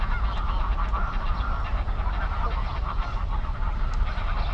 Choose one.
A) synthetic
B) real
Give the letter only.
B